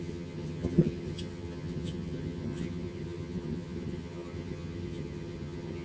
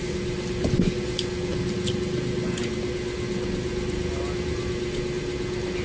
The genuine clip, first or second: second